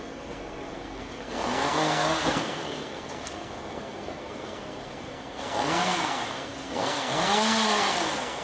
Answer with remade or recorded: remade